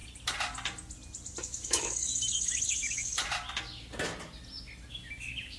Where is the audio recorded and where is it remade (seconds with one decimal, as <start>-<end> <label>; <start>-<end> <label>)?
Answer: 0.0-1.4 recorded; 1.4-3.2 remade; 3.2-4.9 recorded; 4.9-5.6 remade